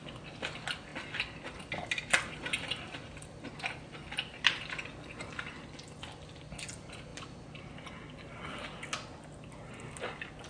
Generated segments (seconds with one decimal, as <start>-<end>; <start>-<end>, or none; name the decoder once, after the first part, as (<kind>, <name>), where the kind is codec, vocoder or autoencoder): none